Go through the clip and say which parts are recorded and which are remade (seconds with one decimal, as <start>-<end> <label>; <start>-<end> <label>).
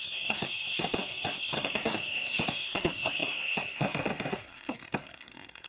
0.0-5.7 remade